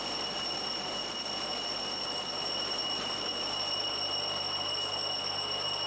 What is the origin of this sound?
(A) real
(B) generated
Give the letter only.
A